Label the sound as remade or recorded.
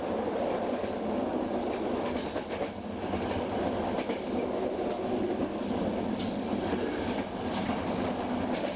recorded